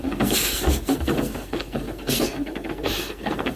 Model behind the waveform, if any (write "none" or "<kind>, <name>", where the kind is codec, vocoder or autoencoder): codec, SNAC